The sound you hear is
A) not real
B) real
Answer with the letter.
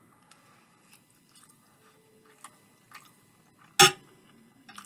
B